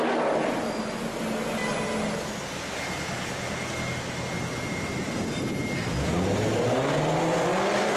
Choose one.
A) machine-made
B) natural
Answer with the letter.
B